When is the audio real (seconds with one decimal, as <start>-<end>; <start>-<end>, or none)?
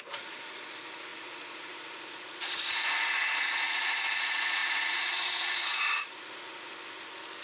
6.7-7.4